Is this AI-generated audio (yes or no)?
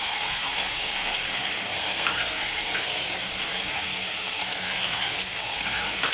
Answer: yes